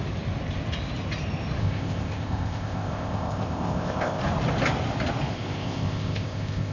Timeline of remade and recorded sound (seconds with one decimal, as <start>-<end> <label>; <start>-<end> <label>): 0.0-1.6 recorded; 1.6-4.2 remade; 4.2-5.3 recorded; 5.3-6.7 remade